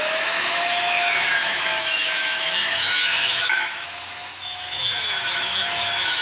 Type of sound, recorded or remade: remade